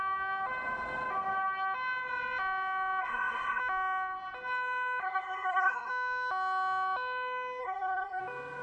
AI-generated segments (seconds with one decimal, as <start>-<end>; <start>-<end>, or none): 3.0-3.6; 5.0-5.9; 7.6-8.2